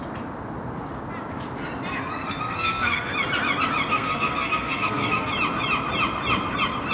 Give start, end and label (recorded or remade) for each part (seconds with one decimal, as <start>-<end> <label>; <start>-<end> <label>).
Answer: 0.0-2.2 recorded; 2.2-3.1 remade; 3.1-3.9 recorded; 3.9-5.3 remade; 5.3-6.9 recorded

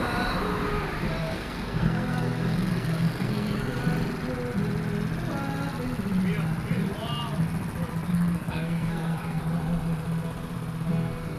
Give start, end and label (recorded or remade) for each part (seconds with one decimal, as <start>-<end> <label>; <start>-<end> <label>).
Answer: 0.0-1.2 recorded; 1.2-3.8 remade; 3.8-8.1 recorded; 8.1-9.4 remade; 9.4-11.4 recorded

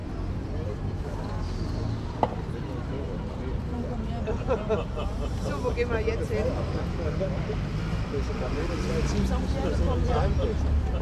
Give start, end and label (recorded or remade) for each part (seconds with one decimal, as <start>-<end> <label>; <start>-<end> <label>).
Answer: 0.0-11.0 recorded

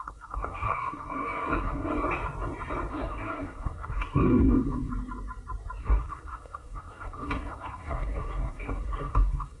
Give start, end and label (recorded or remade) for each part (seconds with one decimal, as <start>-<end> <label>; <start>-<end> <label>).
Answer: 0.0-1.9 remade; 1.9-2.9 recorded; 2.9-4.9 remade; 4.9-5.8 recorded; 5.8-9.6 remade

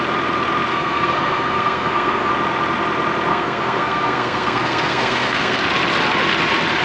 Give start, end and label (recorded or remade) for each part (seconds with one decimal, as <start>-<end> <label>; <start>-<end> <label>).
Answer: 0.0-0.7 recorded; 0.7-2.3 remade; 2.3-3.3 recorded; 3.3-5.6 remade; 5.6-6.8 recorded

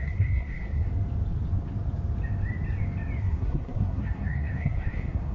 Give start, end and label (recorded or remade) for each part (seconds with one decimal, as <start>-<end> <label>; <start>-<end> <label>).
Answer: 0.0-0.9 remade; 0.9-3.2 recorded; 3.2-5.3 remade

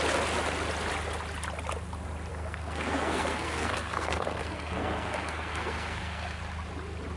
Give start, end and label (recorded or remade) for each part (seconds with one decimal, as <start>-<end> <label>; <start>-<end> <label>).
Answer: 0.0-2.3 recorded; 2.3-6.4 remade; 6.4-7.2 recorded